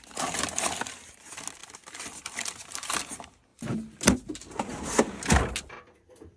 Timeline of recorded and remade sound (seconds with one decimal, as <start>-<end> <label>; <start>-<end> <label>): 0.0-1.6 recorded; 1.6-2.5 remade; 2.5-3.5 recorded; 3.5-4.1 remade; 4.1-6.4 recorded